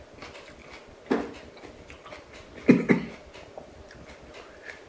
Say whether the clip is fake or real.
real